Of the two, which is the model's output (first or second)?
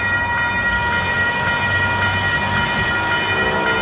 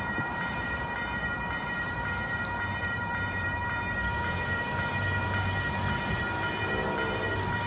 second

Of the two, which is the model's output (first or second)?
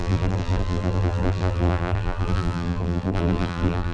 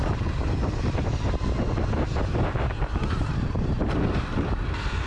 first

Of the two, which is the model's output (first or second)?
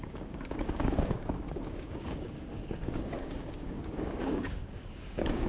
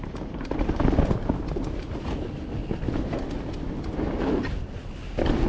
first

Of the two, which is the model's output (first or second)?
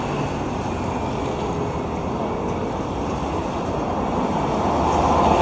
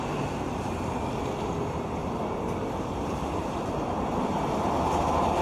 second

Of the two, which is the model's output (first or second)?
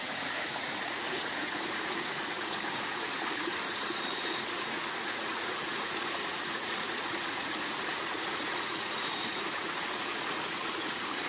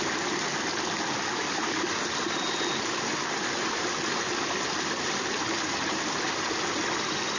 first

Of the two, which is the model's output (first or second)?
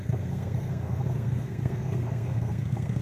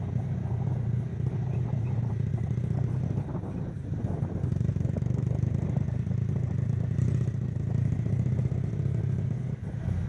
first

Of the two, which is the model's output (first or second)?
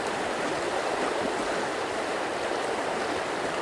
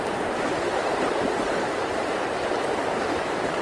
second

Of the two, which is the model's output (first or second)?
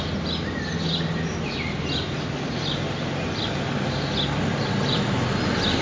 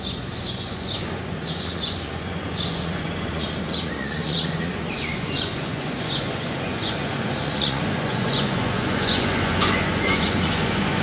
second